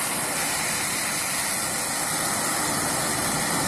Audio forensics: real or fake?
real